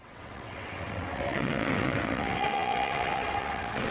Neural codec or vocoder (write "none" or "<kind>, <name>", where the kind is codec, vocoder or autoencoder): vocoder, WaveNeXt